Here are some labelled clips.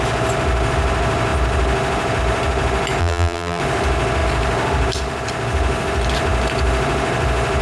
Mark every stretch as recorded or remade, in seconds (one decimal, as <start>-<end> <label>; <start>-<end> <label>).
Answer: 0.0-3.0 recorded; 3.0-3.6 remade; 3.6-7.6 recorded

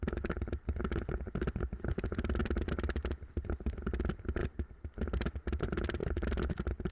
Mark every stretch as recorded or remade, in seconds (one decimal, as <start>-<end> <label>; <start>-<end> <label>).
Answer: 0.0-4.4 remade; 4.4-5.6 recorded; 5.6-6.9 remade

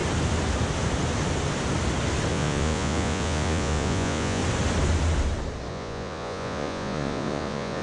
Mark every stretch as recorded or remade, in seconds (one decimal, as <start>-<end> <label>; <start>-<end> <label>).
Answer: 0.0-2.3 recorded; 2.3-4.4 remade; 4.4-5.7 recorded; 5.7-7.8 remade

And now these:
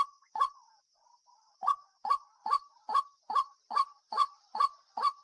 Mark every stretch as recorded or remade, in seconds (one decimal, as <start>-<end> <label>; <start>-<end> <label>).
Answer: 0.0-2.7 remade; 2.7-3.7 recorded; 3.7-5.2 remade

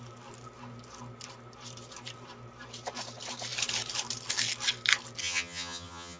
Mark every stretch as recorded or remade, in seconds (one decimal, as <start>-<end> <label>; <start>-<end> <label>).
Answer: 0.0-5.2 recorded; 5.2-6.2 remade